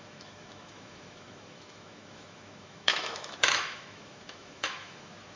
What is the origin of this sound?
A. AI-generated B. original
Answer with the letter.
A